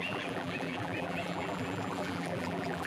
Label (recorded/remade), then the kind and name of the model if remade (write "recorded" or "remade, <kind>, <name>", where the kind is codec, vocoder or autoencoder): remade, vocoder, BigVGAN v2